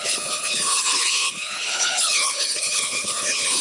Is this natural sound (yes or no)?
no